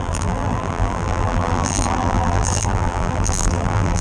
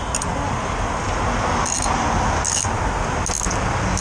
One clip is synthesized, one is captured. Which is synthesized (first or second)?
first